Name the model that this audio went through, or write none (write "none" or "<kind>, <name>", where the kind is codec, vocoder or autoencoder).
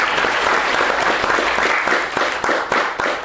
none